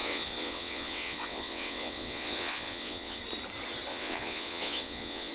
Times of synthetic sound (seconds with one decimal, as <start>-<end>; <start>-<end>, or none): 0.0-3.2; 3.9-5.3